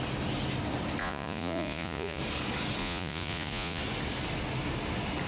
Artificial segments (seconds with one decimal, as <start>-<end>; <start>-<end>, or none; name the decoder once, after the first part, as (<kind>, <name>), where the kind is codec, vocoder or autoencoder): 1.0-2.2 (vocoder, Vocos); 2.8-3.8